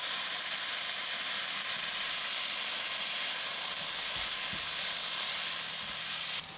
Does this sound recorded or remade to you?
recorded